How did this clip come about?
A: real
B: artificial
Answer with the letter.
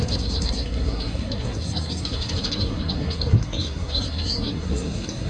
B